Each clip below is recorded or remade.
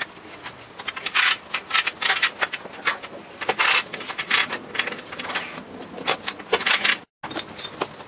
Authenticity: recorded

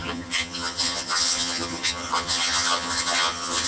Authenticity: remade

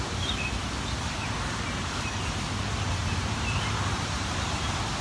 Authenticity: recorded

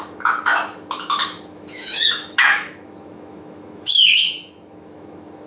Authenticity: remade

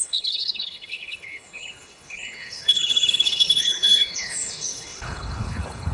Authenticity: remade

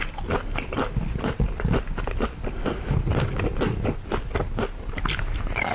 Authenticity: recorded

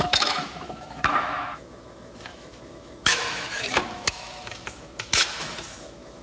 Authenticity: remade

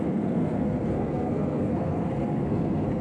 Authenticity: remade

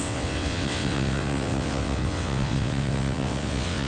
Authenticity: remade